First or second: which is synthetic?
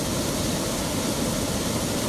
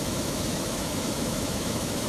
second